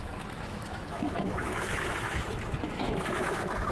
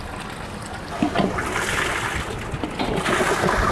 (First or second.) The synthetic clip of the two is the first